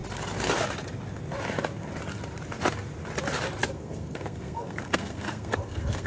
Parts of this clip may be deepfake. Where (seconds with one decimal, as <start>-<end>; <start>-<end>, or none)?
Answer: 3.7-6.1